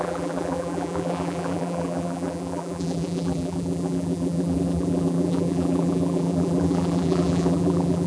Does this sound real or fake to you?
fake